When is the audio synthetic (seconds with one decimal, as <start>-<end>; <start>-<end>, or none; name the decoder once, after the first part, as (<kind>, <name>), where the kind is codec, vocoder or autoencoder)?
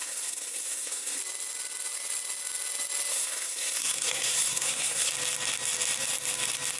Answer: 0.0-1.2 (codec, SNAC); 3.1-5.1